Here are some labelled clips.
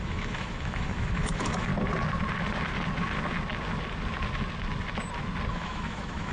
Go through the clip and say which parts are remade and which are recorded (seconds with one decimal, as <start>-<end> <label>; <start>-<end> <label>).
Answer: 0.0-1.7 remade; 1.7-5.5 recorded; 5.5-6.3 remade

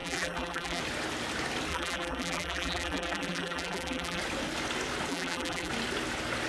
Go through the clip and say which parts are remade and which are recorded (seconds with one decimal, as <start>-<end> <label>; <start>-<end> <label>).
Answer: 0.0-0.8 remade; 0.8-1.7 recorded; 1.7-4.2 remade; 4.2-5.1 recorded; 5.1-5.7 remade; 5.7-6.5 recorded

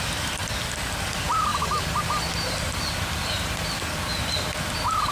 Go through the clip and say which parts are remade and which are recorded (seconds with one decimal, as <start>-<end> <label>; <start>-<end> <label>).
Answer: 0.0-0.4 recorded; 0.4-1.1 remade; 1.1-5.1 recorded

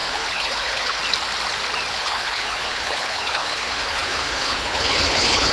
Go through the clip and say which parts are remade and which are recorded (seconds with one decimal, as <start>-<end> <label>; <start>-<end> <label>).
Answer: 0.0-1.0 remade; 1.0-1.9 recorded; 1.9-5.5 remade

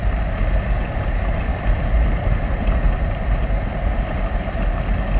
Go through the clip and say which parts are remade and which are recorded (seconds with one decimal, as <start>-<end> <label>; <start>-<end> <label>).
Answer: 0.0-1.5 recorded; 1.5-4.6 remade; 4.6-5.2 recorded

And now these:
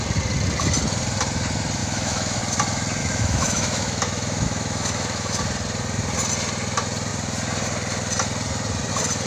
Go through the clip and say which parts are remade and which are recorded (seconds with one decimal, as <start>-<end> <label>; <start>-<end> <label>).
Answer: 0.0-1.8 recorded; 1.8-2.4 remade; 2.4-3.0 recorded; 3.0-5.4 remade; 5.4-9.3 recorded

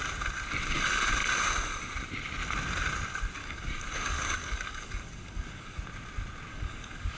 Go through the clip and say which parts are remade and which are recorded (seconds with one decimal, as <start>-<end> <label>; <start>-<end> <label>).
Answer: 0.0-3.4 recorded; 3.4-5.8 remade; 5.8-6.5 recorded; 6.5-7.2 remade